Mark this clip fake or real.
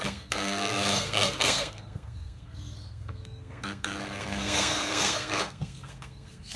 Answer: fake